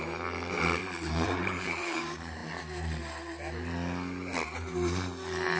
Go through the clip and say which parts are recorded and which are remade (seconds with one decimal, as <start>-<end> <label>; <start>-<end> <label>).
0.0-0.8 recorded; 0.8-2.0 remade; 2.0-5.6 recorded